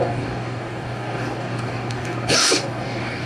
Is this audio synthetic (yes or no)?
yes